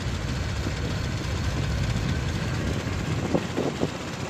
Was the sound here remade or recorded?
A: recorded